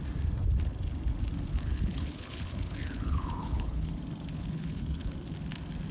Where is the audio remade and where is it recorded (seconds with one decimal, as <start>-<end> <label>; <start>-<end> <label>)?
0.0-1.5 recorded; 1.5-3.9 remade; 3.9-4.3 recorded; 4.3-5.1 remade; 5.1-5.9 recorded